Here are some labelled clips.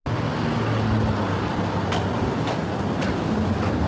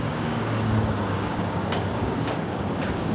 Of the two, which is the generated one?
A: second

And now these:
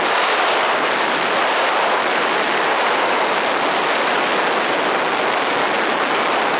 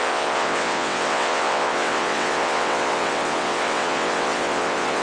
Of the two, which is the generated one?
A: second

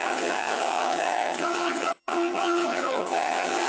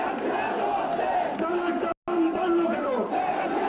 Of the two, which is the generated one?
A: first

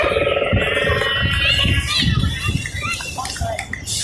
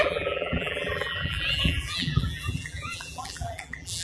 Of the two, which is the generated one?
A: second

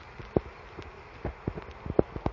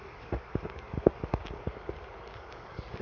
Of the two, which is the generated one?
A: second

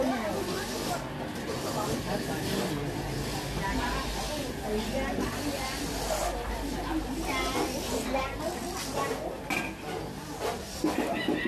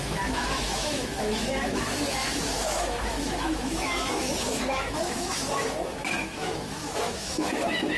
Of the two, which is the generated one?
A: second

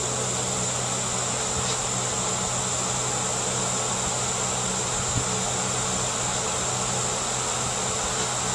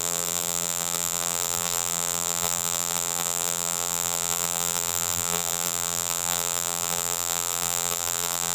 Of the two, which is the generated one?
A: second